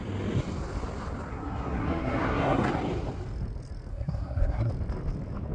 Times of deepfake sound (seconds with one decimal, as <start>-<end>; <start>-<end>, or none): 1.3-2.7; 3.9-4.7